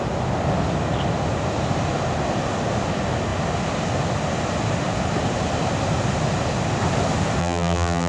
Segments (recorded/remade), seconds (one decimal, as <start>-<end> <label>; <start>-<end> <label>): 0.0-7.4 recorded; 7.4-8.1 remade